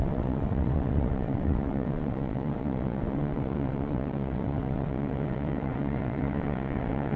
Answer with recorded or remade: remade